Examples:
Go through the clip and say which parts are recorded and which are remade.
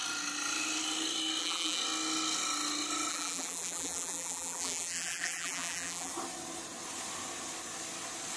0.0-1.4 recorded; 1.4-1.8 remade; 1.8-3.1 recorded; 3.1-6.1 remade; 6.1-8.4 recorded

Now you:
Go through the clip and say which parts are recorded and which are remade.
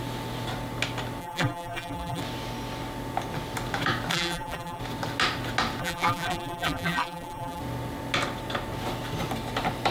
0.0-1.2 recorded; 1.2-2.2 remade; 2.2-4.1 recorded; 4.1-4.8 remade; 4.8-5.8 recorded; 5.8-7.6 remade; 7.6-9.9 recorded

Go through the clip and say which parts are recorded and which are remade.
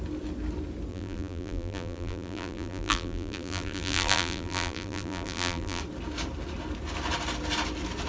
0.0-0.9 recorded; 0.9-5.8 remade; 5.8-8.1 recorded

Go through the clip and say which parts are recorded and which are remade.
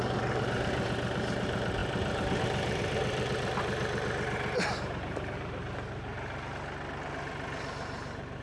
0.0-6.1 remade; 6.1-7.6 recorded; 7.6-8.4 remade